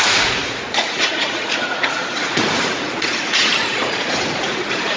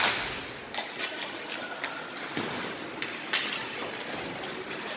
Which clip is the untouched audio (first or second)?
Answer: second